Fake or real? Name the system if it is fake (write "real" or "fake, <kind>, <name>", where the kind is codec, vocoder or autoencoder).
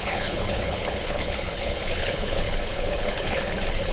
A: fake, codec, HILCodec